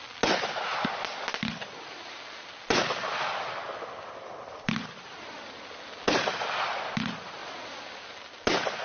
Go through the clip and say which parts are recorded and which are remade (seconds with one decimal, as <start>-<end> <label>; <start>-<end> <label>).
0.0-8.8 recorded

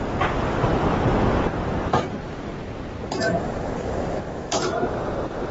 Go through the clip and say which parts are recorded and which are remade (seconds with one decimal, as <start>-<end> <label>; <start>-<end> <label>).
0.0-0.7 remade; 0.7-1.6 recorded; 1.6-2.5 remade; 2.5-4.2 recorded; 4.2-5.5 remade

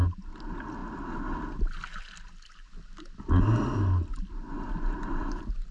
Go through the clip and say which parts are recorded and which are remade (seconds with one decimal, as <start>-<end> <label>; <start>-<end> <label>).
0.0-5.0 recorded; 5.0-5.7 remade

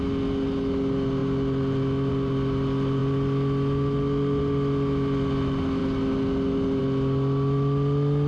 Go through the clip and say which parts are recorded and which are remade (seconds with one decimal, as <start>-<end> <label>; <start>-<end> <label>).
0.0-1.2 recorded; 1.2-2.1 remade; 2.1-8.3 recorded

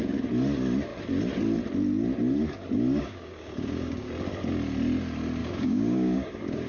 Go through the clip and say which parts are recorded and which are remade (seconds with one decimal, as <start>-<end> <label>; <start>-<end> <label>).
0.0-3.0 recorded; 3.0-4.1 remade; 4.1-5.4 recorded; 5.4-6.7 remade